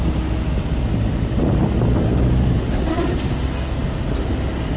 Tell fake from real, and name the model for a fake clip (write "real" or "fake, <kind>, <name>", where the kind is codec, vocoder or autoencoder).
real